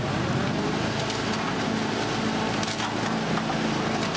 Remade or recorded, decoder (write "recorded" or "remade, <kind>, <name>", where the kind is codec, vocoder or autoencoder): recorded